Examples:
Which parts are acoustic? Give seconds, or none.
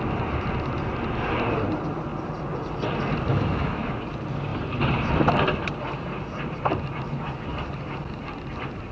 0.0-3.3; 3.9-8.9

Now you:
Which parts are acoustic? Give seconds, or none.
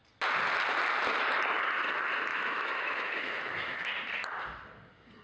0.0-2.3; 3.9-5.2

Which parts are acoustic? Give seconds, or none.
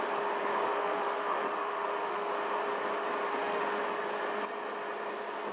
0.0-0.7; 2.3-3.3; 3.8-5.5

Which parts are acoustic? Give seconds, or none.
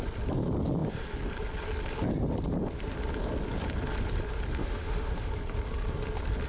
0.0-4.6; 5.3-6.5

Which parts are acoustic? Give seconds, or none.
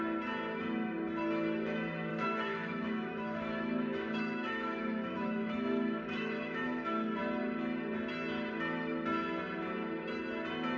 0.0-2.1; 7.2-10.8